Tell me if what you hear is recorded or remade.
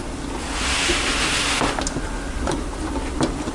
recorded